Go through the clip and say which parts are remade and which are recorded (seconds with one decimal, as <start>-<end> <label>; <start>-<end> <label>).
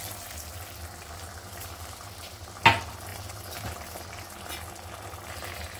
0.0-5.8 recorded